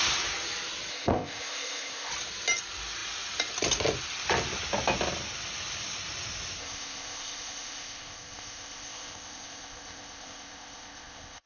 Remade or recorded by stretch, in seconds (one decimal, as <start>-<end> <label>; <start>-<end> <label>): 0.0-0.9 recorded; 0.9-2.1 remade; 2.1-6.6 recorded; 6.6-11.5 remade